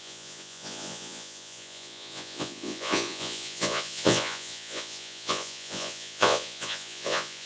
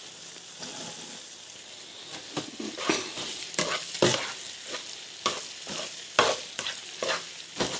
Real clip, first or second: second